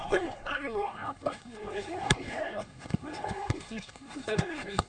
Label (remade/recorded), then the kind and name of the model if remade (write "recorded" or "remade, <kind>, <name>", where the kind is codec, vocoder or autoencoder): remade, codec, SNAC